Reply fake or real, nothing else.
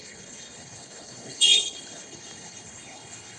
fake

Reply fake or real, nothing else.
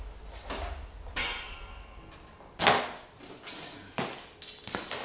real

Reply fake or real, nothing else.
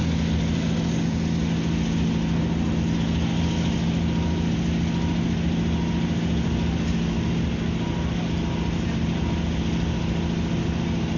real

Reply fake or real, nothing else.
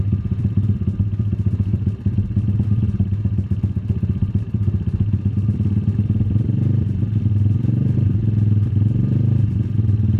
fake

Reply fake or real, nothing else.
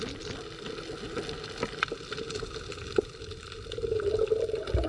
real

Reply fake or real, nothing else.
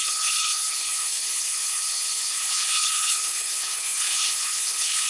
fake